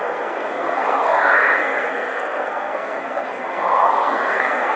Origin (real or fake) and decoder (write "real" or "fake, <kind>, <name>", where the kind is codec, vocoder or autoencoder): fake, codec, SNAC